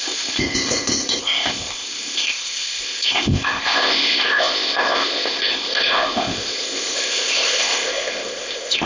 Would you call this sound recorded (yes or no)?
no